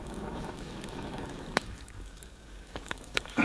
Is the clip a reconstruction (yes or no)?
yes